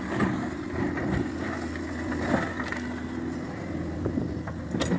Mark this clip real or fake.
real